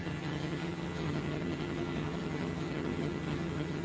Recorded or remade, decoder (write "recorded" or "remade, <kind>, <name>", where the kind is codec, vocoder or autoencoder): remade, vocoder, HiFi-GAN